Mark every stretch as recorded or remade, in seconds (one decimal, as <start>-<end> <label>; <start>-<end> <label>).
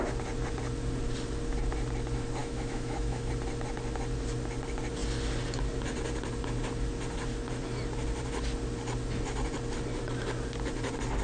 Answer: 0.0-2.4 recorded; 2.4-3.3 remade; 3.3-11.2 recorded